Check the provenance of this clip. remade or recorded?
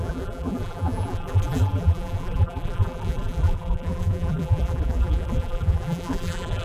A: remade